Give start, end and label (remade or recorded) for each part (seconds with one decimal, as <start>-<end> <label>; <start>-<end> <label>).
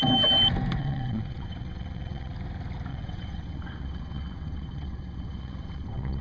0.0-0.8 recorded; 0.8-2.3 remade; 2.3-2.9 recorded; 2.9-6.2 remade